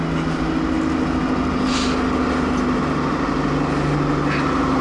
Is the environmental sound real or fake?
real